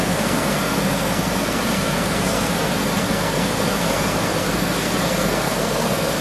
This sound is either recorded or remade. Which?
remade